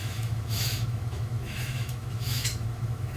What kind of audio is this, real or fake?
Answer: fake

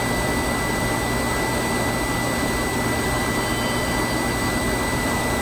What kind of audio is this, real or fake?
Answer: real